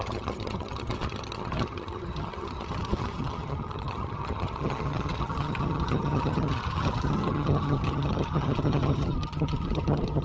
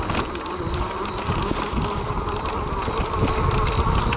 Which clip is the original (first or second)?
second